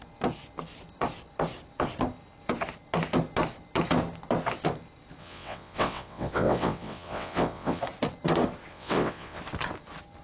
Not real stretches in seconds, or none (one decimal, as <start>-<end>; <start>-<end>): 5.2-7.8; 8.7-9.4